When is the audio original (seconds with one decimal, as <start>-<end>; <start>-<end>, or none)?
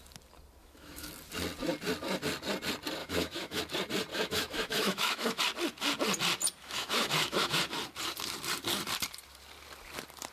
0.0-0.6; 1.1-3.0; 3.6-4.1; 5.4-6.6; 7.6-10.3